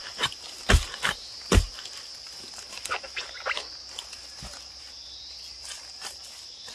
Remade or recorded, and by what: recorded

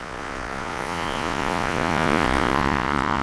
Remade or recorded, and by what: remade, vocoder, Vocos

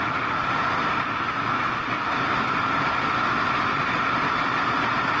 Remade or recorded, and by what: recorded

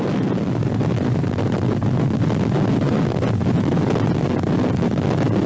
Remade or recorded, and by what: recorded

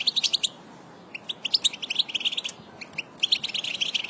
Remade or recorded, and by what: recorded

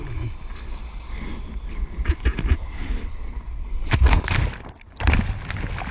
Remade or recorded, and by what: recorded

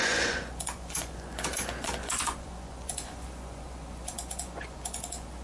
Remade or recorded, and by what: remade, vocoder, Vocos